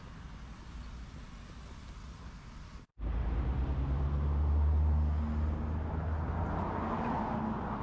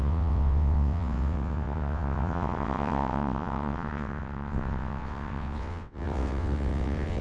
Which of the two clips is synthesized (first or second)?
second